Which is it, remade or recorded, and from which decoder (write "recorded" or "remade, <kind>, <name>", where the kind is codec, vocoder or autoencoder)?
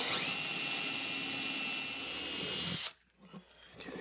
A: recorded